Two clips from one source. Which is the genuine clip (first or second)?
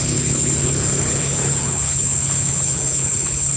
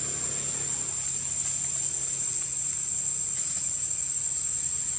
second